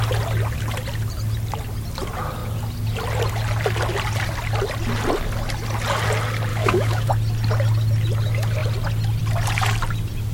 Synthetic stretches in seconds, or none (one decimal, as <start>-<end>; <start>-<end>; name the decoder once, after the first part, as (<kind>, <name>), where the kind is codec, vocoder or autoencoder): 6.5-7.1 (autoencoder, DAC-VAE)